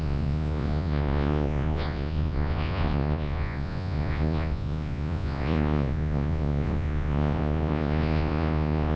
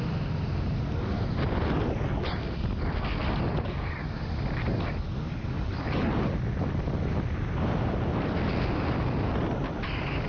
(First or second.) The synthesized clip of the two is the first